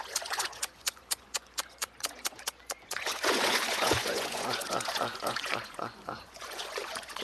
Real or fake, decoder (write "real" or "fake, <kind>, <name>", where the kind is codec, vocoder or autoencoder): fake, vocoder, Vocos